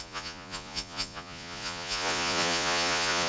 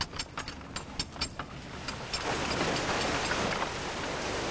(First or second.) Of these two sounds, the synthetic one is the first